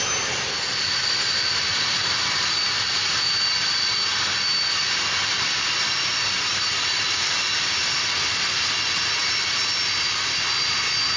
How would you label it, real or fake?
real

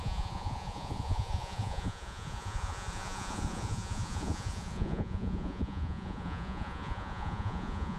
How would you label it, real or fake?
fake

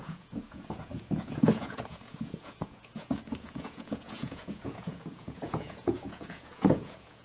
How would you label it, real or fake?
fake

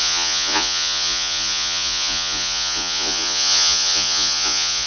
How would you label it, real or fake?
fake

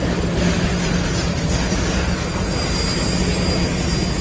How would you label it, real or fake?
real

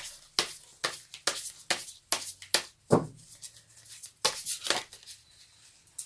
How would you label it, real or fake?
real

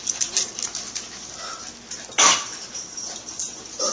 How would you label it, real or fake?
real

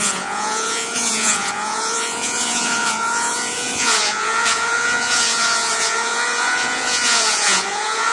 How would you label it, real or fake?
fake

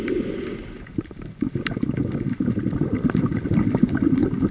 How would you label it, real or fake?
real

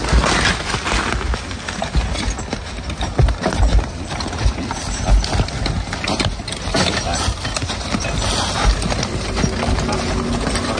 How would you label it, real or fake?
real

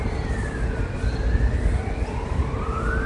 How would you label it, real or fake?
real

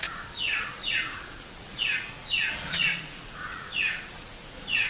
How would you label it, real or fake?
fake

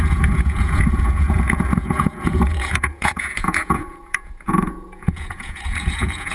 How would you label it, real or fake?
fake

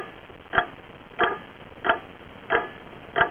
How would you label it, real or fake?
real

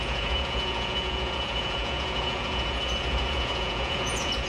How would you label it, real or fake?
fake